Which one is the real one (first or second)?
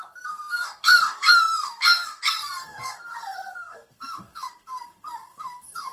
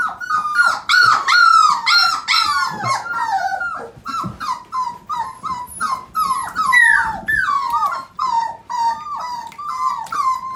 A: second